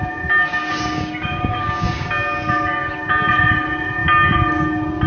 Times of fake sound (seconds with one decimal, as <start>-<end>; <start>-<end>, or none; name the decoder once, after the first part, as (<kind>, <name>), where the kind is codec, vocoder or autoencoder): 0.5-2.1 (codec, DAC)